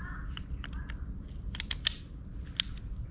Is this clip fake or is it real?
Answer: real